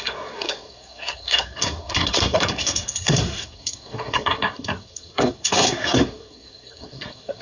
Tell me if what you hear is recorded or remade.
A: remade